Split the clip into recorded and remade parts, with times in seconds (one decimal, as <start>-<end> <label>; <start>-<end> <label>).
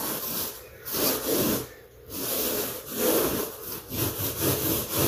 0.0-0.9 remade; 0.9-2.3 recorded; 2.3-2.9 remade; 2.9-4.2 recorded; 4.2-5.1 remade